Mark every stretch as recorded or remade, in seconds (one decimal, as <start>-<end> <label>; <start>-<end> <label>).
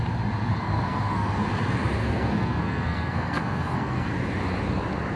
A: 0.0-0.5 recorded; 0.5-1.3 remade; 1.3-2.0 recorded; 2.0-4.1 remade; 4.1-5.2 recorded